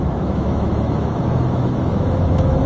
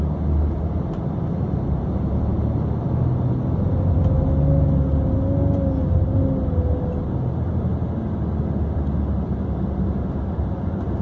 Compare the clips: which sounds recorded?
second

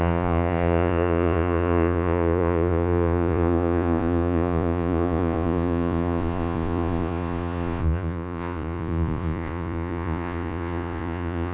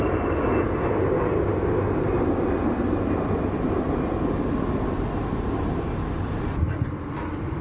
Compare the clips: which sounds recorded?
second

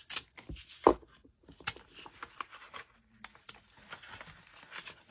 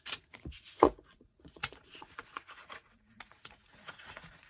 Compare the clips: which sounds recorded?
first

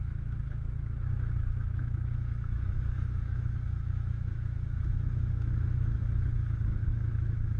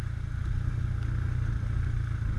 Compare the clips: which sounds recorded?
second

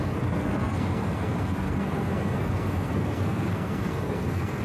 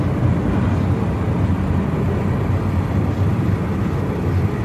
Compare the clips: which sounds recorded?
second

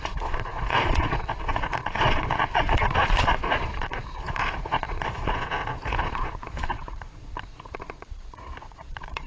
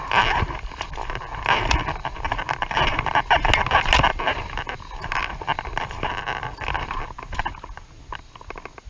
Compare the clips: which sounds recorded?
second